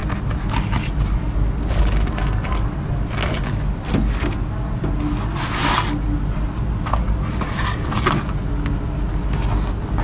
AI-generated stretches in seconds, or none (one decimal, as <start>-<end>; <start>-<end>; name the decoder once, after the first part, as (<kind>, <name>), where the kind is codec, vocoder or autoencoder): none